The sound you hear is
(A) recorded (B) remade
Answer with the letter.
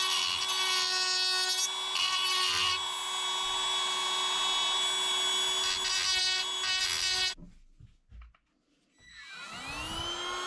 A